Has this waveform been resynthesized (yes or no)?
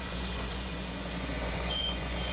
yes